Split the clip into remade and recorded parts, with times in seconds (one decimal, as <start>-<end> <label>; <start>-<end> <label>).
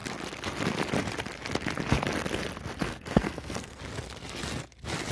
0.0-2.9 recorded; 2.9-3.8 remade; 3.8-5.1 recorded